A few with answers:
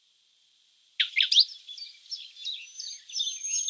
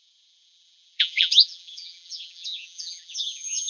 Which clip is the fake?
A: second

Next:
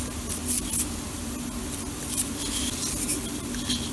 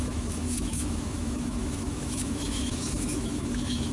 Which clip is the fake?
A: second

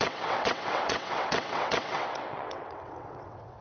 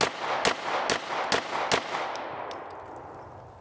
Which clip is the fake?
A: first